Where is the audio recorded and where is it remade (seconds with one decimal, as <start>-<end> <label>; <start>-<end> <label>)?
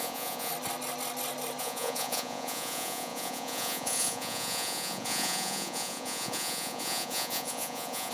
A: 0.0-0.5 remade; 0.5-1.6 recorded; 1.6-8.1 remade